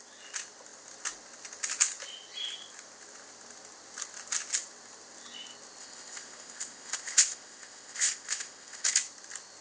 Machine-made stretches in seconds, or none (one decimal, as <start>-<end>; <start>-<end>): 5.8-8.9